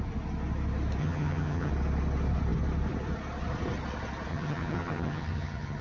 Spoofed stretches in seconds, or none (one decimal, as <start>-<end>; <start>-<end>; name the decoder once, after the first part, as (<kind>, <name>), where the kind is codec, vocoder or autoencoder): 1.0-1.7 (vocoder, HiFi-GAN); 4.3-5.8